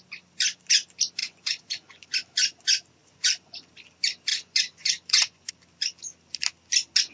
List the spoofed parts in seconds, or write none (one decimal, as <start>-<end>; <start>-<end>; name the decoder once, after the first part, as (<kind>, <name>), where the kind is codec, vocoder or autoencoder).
1.2-2.0 (vocoder, Vocos); 3.0-3.7; 4.3-5.5